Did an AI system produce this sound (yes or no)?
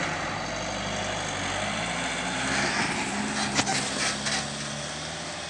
no